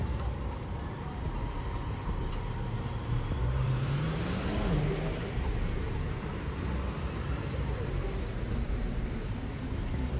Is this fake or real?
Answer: fake